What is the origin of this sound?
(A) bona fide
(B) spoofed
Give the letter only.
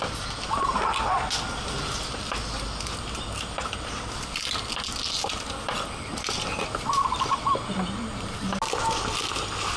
A